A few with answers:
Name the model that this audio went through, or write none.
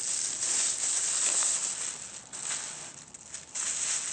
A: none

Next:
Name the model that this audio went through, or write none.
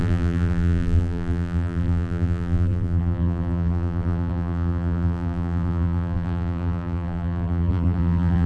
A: vocoder, BigVGAN v2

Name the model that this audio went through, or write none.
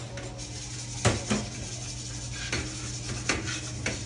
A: none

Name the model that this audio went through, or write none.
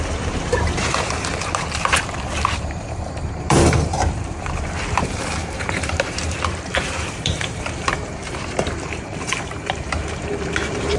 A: vocoder, BigVGAN v2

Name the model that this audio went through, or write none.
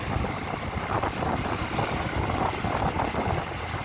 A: none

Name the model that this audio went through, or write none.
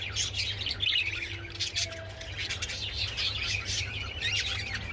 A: none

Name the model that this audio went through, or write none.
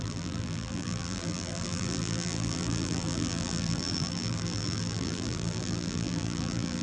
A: vocoder, BigVGAN v2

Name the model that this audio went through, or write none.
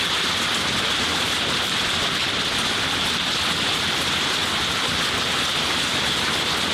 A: none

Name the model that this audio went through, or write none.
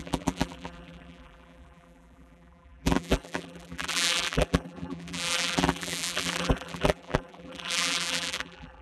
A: vocoder, BigVGAN v2